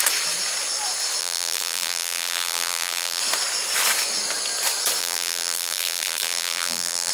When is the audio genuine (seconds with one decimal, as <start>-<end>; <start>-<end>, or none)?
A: 0.0-1.2; 3.2-5.0